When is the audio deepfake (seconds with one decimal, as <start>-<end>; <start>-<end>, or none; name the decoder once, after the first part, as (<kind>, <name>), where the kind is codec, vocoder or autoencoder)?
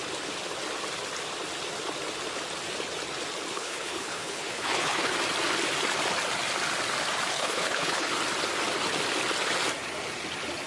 3.5-5.1 (codec, HILCodec); 7.3-8.1